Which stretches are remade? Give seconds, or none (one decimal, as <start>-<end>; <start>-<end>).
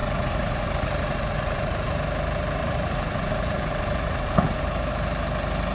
0.0-2.0; 2.6-4.6